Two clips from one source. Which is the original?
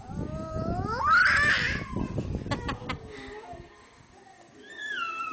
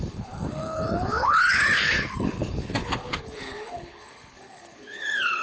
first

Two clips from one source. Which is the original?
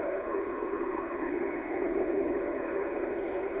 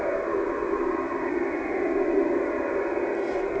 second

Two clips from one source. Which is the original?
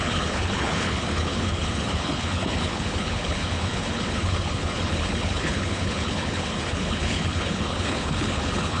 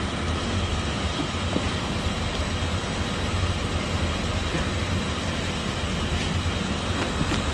second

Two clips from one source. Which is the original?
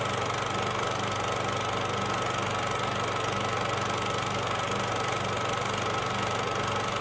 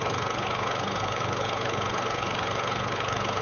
first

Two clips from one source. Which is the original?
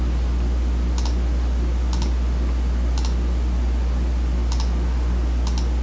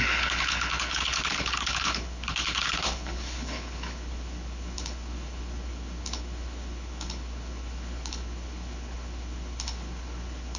first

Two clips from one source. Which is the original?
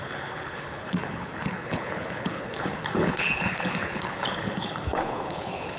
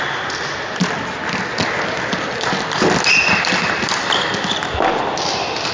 second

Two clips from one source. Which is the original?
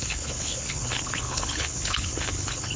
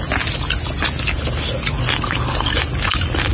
second